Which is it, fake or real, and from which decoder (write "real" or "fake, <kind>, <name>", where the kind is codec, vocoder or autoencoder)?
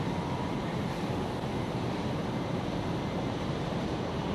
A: fake, vocoder, BigVGAN v2